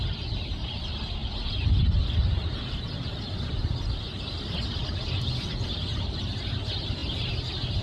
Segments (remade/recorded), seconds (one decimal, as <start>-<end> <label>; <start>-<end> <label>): 0.0-7.8 recorded